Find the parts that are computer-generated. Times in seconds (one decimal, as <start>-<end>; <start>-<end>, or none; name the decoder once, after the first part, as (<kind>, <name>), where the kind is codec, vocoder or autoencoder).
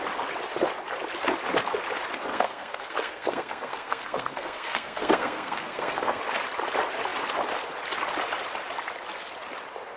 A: 2.3-6.2 (codec, SNAC)